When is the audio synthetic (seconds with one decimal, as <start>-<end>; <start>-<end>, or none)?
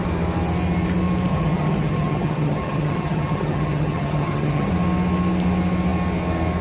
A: 1.3-4.7